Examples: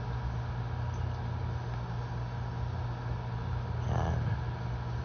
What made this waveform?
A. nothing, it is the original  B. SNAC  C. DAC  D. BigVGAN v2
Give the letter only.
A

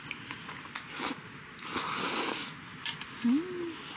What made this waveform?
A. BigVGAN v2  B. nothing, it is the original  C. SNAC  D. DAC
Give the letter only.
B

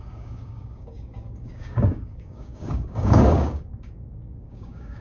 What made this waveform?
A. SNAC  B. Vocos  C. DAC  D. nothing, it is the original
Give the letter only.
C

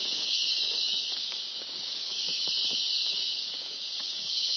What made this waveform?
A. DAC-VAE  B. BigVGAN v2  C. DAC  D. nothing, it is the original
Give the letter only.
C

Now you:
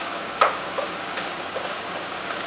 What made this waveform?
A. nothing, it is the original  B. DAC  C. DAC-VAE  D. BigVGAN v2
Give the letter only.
B